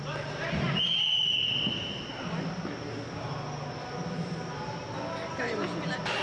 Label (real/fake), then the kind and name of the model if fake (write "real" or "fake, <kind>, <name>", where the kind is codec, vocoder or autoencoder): real